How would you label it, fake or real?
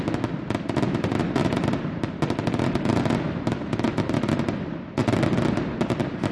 real